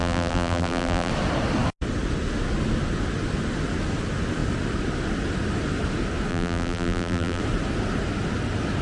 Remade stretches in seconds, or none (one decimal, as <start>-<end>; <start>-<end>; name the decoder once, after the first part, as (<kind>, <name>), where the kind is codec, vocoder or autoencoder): 0.0-1.1 (vocoder, BigVGAN v2); 6.3-7.4